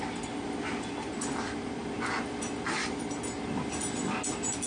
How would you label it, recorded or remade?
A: recorded